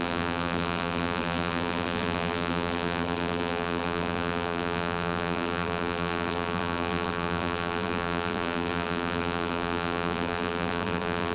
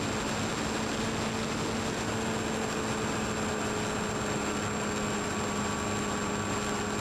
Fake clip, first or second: first